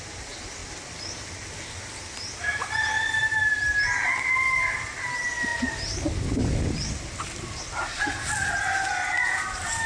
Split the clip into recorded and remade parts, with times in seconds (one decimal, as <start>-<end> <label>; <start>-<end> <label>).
0.0-9.9 recorded